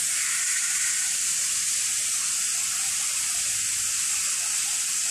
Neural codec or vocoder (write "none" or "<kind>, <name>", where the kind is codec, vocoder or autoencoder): none